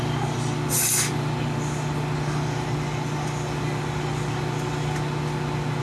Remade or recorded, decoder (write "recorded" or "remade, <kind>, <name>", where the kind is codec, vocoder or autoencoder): recorded